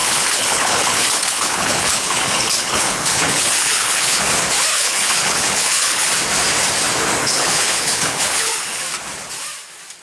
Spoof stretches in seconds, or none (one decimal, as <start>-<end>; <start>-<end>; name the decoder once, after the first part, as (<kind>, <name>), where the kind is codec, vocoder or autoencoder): 0.0-4.2 (codec, HILCodec); 4.7-6.1; 7.2-8.8